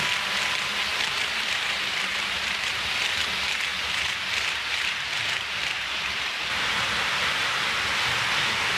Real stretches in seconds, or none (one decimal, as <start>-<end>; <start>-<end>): 0.0-0.9; 2.7-3.7; 6.6-8.8